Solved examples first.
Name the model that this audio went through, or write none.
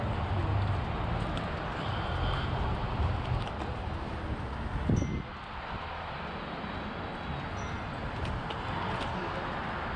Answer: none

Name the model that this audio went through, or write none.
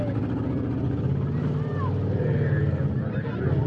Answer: none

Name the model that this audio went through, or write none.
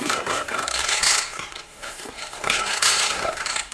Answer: codec, SNAC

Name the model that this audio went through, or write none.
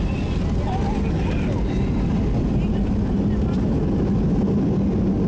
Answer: none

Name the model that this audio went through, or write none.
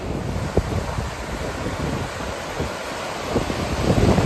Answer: none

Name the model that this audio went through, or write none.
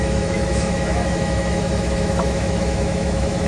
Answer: autoencoder, DAC-VAE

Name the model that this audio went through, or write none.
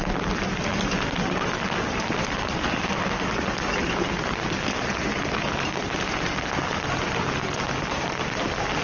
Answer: none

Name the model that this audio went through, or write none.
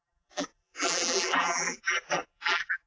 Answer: vocoder, BigVGAN v2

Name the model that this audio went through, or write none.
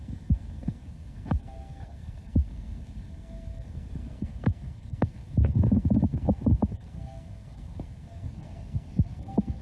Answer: codec, SNAC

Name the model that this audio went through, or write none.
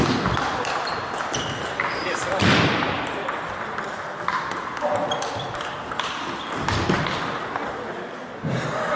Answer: none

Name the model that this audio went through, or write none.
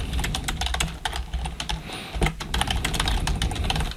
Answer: none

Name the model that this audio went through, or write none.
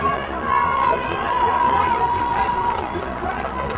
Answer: vocoder, Vocos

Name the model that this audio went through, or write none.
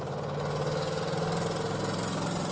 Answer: none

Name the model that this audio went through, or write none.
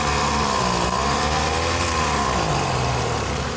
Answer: none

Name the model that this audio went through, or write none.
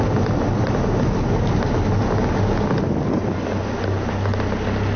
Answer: none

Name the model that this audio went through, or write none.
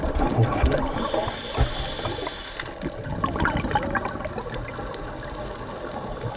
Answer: none